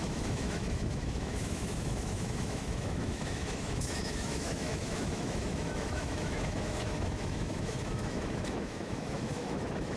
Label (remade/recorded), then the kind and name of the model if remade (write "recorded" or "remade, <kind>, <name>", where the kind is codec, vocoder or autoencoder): remade, autoencoder, DAC-VAE